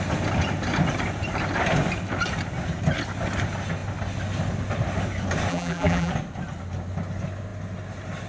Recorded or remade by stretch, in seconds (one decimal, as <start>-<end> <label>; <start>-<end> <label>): 0.0-5.5 recorded; 5.5-6.1 remade; 6.1-8.3 recorded